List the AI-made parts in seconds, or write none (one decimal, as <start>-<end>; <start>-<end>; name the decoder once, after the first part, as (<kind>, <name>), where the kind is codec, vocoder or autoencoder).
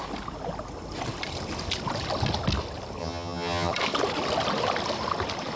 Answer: 3.0-3.7 (vocoder, HiFi-GAN)